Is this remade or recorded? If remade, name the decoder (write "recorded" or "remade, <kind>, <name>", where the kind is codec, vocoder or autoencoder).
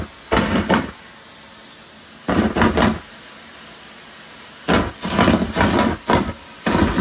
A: recorded